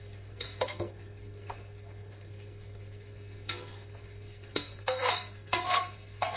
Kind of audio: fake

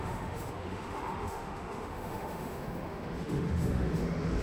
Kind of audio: fake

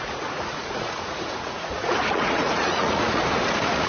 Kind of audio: fake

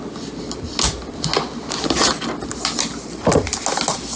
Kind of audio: real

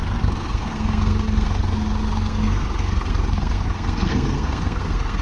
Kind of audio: fake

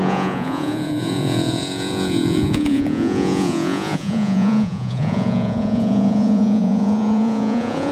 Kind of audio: fake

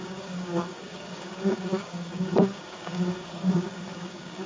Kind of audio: fake